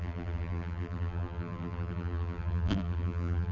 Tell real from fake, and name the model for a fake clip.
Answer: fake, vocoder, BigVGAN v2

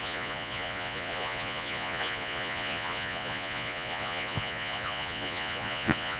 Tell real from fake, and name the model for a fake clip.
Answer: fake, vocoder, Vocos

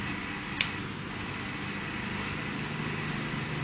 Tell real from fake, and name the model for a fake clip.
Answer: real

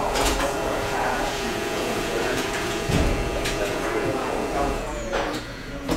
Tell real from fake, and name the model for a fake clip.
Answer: fake, vocoder, Vocos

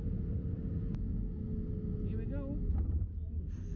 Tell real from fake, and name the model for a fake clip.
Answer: real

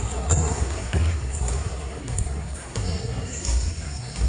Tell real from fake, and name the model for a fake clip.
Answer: fake, codec, SNAC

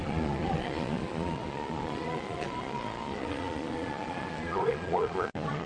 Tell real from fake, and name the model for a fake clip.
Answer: fake, vocoder, Vocos